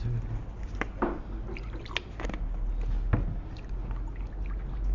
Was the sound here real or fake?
real